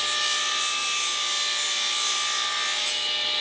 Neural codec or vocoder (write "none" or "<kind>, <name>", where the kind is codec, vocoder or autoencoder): none